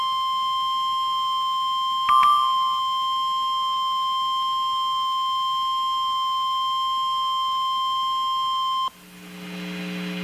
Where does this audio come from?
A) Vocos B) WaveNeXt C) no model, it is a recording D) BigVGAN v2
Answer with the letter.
C